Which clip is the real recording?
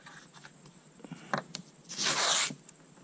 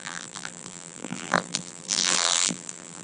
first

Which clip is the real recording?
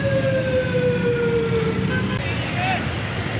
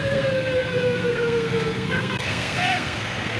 first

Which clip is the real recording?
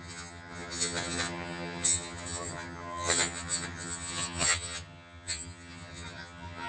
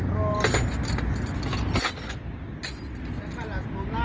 second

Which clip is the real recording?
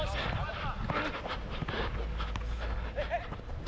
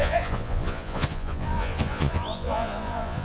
first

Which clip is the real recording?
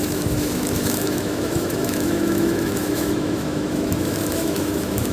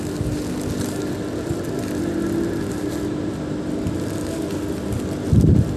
second